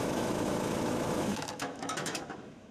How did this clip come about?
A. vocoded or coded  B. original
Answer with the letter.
A